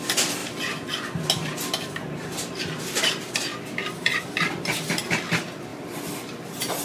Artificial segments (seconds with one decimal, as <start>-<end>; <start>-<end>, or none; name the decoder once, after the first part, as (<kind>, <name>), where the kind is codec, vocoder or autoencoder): none